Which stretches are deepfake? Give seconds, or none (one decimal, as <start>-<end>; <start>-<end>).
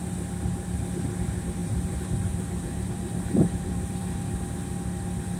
1.6-4.2